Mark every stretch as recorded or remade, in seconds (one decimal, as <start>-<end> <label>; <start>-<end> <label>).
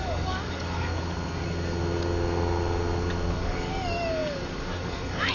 0.0-0.9 remade; 0.9-3.3 recorded; 3.3-5.3 remade